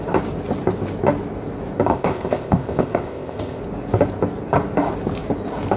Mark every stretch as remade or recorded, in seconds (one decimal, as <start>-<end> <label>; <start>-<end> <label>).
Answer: 0.0-1.9 recorded; 1.9-3.6 remade; 3.6-5.8 recorded